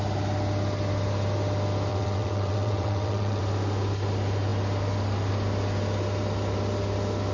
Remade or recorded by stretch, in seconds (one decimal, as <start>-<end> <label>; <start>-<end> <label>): 0.0-1.9 recorded; 1.9-3.4 remade; 3.4-7.3 recorded